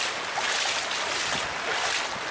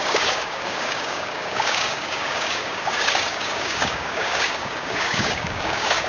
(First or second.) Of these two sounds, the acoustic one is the first